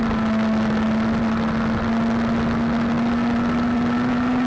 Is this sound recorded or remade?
recorded